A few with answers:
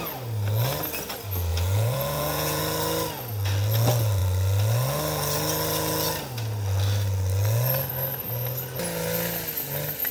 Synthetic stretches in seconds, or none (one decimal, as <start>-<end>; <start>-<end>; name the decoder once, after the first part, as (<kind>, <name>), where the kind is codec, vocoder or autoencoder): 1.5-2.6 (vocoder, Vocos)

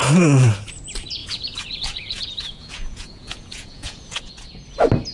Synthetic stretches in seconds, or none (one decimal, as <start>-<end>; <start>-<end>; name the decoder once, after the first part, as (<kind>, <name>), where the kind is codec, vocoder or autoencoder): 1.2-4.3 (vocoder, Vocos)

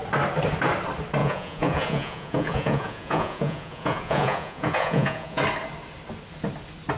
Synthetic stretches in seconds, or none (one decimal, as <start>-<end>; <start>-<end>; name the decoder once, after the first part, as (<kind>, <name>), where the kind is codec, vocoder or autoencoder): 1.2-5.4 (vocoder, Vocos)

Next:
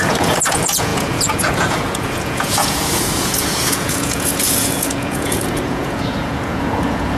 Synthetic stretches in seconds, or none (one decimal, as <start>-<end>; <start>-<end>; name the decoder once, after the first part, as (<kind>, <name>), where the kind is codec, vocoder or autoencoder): 0.0-7.2 (vocoder, Vocos)

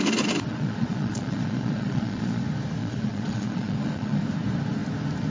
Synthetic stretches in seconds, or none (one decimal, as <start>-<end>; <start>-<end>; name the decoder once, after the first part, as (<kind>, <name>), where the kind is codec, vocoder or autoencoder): 0.5-2.4 (vocoder, Vocos); 2.8-4.2

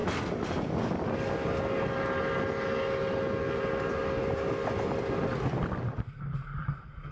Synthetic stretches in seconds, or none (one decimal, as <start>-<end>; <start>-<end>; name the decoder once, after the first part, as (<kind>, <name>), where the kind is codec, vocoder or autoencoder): none

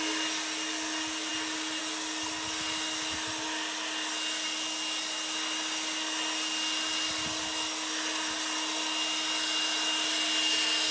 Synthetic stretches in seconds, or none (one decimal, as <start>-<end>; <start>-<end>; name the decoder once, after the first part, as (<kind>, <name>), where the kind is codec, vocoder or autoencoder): none

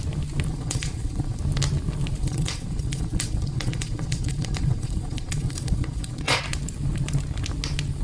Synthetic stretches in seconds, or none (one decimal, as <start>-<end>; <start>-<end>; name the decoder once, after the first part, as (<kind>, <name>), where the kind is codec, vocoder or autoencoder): 0.5-1.4 (vocoder, Vocos); 2.2-6.4